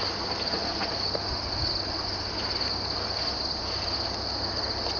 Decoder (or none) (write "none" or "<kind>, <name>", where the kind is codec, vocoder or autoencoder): none